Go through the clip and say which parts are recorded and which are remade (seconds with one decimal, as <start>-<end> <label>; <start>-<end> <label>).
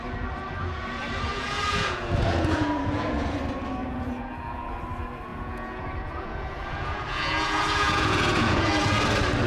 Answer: 0.0-1.3 recorded; 1.3-3.4 remade; 3.4-3.8 recorded; 3.8-4.7 remade; 4.7-5.3 recorded; 5.3-9.0 remade; 9.0-9.5 recorded